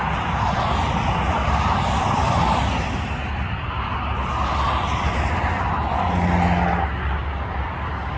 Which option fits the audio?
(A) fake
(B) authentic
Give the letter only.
B